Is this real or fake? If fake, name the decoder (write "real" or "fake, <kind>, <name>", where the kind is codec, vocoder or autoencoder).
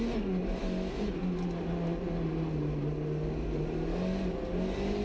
real